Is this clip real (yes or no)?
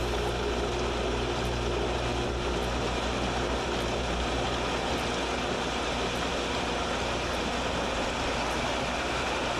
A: yes